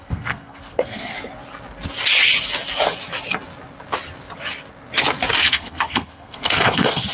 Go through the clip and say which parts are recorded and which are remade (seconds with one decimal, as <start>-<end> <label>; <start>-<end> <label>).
0.0-1.1 remade; 1.1-5.4 recorded; 5.4-7.1 remade